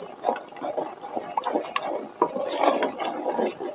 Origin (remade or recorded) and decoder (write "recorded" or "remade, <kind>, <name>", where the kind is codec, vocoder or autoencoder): recorded